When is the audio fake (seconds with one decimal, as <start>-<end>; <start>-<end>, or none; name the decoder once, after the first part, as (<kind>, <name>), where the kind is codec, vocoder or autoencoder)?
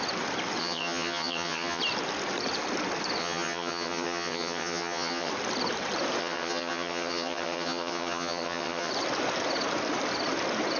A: 0.6-1.8 (vocoder, HiFi-GAN); 3.2-5.3; 6.2-8.9